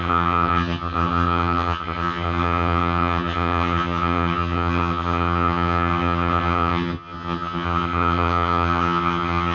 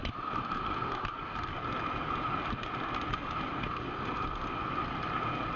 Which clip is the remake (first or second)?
first